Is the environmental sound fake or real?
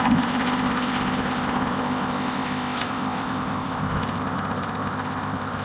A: fake